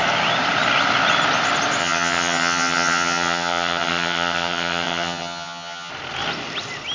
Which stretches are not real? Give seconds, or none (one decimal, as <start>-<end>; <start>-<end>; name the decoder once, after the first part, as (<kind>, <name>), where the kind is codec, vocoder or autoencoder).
1.8-5.9 (vocoder, HiFi-GAN)